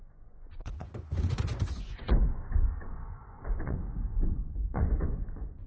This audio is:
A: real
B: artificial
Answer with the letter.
B